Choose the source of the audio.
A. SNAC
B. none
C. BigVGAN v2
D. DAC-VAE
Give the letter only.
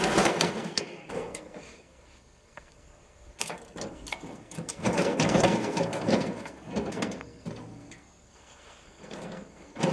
A